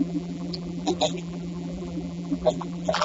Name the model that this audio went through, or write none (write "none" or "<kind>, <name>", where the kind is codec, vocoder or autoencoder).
vocoder, BigVGAN v2